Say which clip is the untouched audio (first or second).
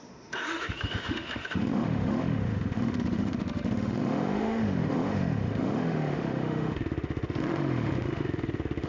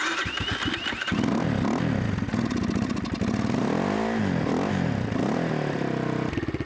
second